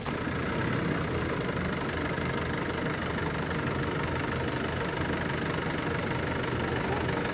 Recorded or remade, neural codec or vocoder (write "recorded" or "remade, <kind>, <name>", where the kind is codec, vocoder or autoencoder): recorded